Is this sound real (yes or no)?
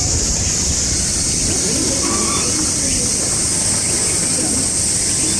yes